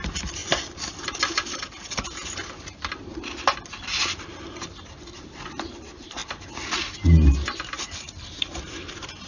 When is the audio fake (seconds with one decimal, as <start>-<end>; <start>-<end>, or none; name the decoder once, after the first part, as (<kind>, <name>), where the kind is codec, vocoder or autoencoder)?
0.0-0.4 (vocoder, BigVGAN v2); 4.9-6.2; 6.8-9.3